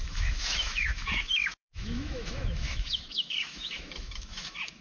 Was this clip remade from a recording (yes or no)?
yes